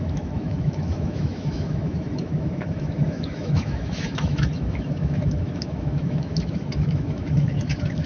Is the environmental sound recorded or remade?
remade